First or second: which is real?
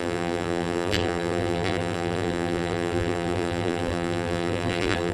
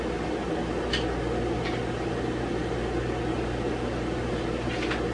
second